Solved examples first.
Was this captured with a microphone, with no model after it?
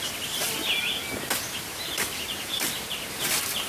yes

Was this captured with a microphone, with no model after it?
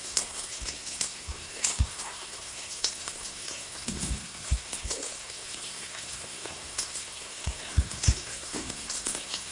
no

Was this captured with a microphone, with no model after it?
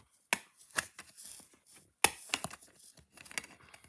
yes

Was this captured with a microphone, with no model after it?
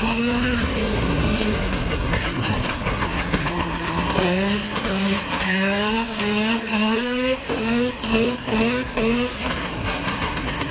no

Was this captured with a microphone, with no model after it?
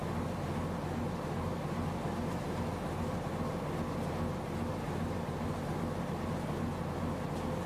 yes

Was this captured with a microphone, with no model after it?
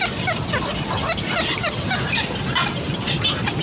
yes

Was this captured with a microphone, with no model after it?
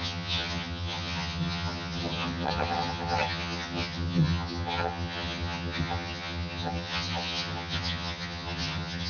no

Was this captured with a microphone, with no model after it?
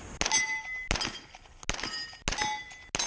yes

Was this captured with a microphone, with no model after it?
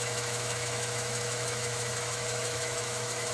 no